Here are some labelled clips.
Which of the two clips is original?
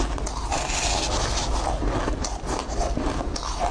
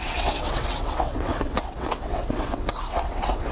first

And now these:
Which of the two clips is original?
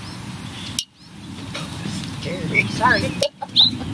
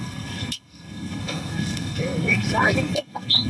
first